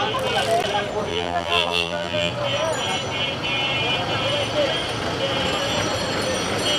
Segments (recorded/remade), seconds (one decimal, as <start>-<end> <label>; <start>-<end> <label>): 0.0-1.1 recorded; 1.1-2.3 remade; 2.3-6.8 recorded